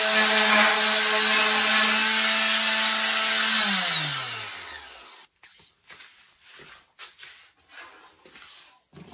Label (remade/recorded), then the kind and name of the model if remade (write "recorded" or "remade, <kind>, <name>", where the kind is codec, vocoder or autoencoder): recorded